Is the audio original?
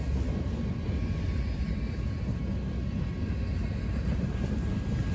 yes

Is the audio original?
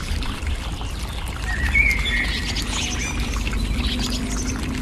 yes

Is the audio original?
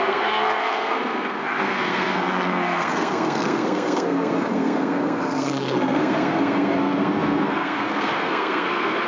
no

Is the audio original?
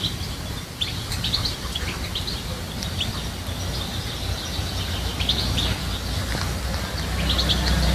yes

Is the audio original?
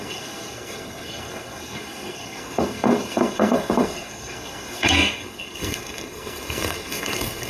no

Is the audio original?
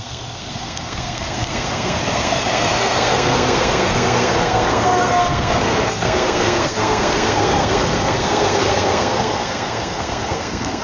no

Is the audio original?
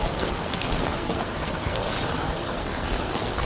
no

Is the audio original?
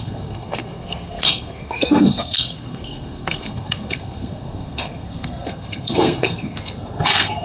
no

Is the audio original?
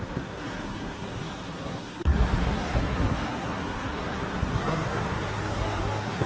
no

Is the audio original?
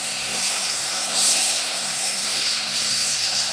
no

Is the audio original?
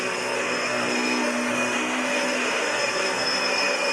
no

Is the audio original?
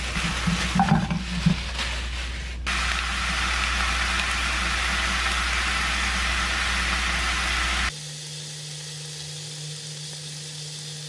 yes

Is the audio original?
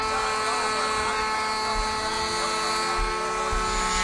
yes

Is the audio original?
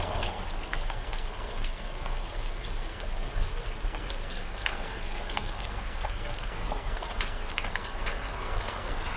no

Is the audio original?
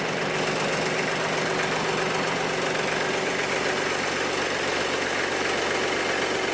yes